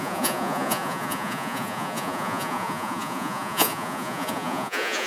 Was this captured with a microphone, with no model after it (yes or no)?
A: no